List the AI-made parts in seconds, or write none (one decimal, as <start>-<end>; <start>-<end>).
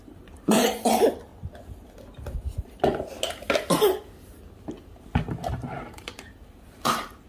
0.0-1.3; 5.5-7.3